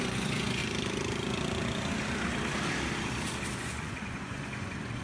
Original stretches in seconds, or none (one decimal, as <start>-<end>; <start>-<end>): 0.6-3.6